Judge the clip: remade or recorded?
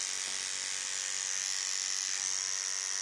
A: recorded